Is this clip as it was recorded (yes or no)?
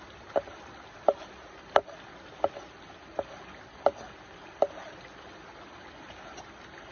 yes